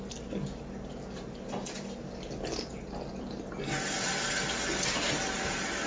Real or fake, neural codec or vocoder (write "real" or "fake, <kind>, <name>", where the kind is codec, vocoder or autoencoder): real